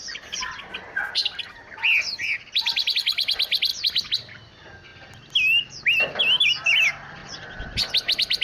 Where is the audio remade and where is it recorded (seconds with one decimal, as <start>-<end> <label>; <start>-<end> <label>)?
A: 0.0-8.4 recorded